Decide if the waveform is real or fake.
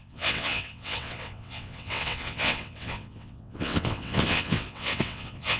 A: fake